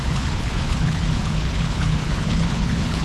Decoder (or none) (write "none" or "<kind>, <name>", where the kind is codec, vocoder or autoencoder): codec, HILCodec